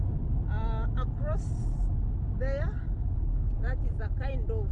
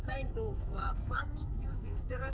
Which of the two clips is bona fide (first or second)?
first